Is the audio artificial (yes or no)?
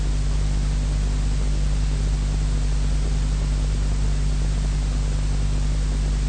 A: no